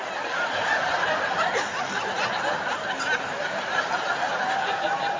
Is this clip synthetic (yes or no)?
no